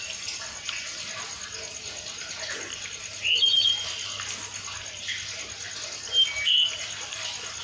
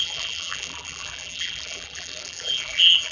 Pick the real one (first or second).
first